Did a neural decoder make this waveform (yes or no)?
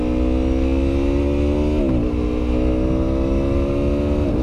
no